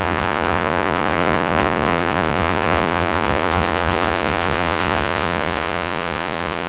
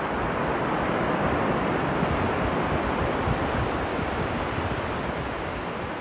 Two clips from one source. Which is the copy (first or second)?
first